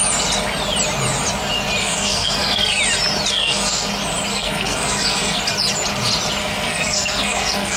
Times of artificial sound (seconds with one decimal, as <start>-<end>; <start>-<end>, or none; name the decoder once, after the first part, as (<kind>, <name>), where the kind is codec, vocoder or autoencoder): 1.8-2.8 (codec, SNAC); 3.3-3.9; 4.3-5.4; 6.4-7.8